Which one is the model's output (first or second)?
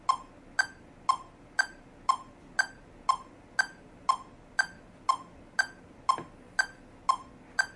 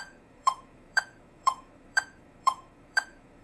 second